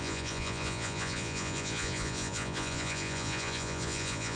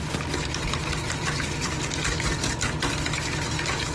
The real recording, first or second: second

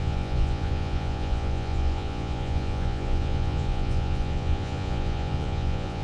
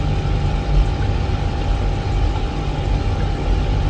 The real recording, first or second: second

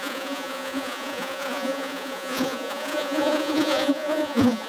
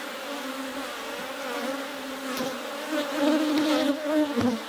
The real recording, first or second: second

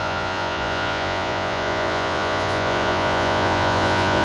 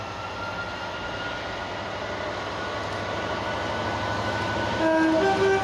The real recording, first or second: second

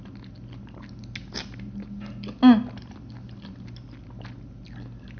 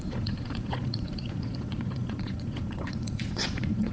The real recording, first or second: first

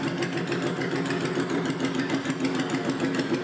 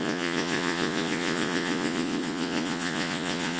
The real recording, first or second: first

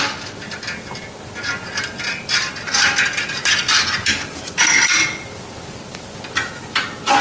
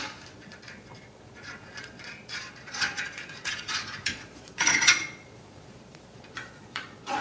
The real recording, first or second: first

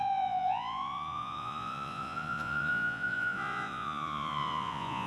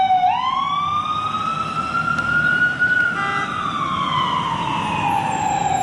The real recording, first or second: second